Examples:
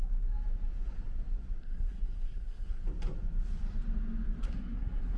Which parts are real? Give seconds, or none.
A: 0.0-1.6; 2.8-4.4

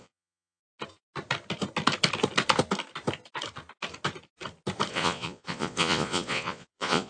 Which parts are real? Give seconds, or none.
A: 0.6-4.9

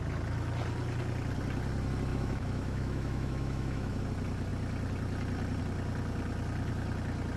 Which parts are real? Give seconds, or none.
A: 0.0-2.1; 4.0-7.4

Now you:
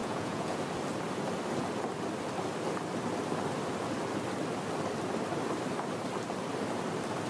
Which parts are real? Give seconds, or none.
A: 0.6-7.3

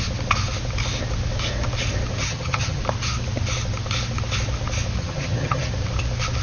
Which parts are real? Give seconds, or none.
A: 0.0-2.2; 2.8-5.0; 5.7-6.4